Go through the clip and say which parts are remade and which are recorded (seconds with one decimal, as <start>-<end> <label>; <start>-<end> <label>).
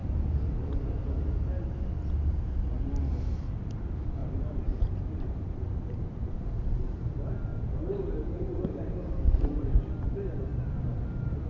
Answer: 0.0-1.0 remade; 1.0-4.2 recorded; 4.2-7.1 remade; 7.1-7.5 recorded; 7.5-10.4 remade; 10.4-11.5 recorded